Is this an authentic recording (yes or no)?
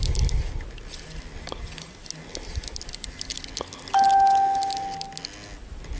yes